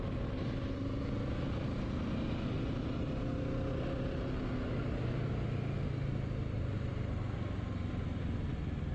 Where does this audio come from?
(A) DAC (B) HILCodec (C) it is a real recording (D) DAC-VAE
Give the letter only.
C